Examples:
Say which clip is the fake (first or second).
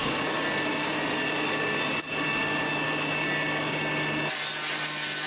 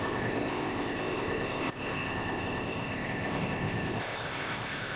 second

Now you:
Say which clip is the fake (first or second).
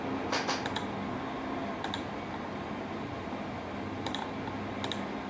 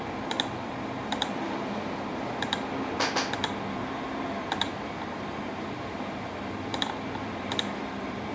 second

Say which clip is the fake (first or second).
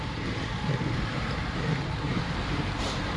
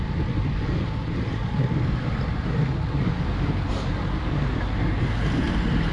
first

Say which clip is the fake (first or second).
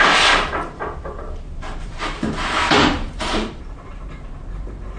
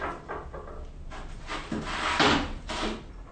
first